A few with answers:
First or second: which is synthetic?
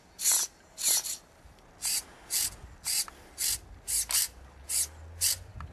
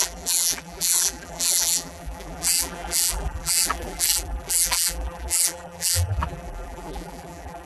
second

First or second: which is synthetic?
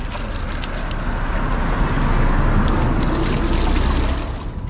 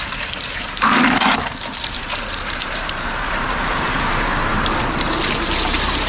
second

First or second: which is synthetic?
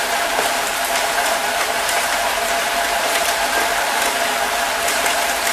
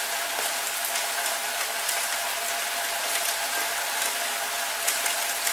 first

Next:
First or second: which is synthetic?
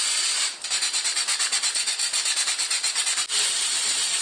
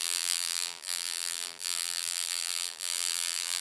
second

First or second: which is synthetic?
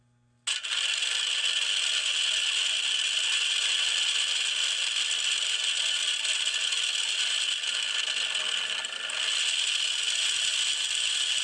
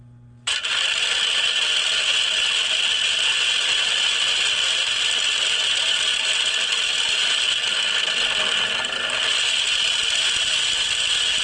second